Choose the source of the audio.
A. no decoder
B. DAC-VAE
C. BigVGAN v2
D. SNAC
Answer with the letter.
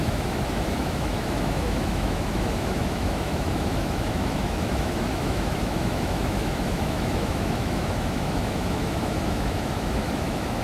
B